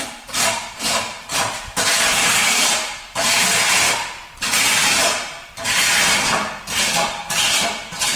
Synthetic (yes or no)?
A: yes